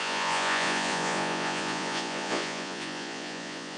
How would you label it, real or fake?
fake